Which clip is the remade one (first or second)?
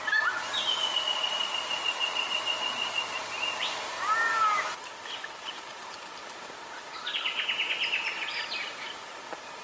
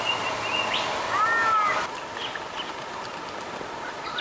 first